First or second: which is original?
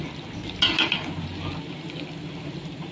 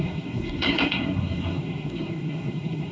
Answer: first